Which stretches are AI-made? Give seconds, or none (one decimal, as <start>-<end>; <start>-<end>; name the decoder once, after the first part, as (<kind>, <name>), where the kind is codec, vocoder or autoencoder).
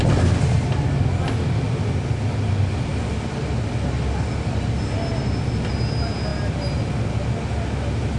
none